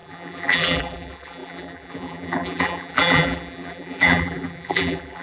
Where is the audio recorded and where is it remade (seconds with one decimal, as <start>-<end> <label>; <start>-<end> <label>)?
0.0-5.2 remade